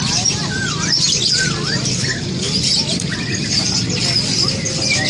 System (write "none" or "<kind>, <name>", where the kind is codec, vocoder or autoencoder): vocoder, BigVGAN v2